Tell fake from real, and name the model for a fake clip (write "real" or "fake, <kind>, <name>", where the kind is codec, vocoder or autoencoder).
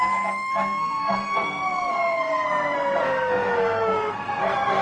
fake, codec, SNAC